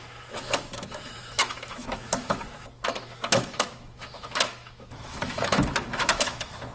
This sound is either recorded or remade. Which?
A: remade